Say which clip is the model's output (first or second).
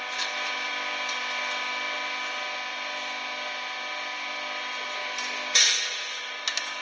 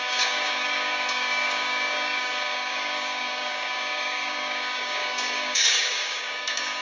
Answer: second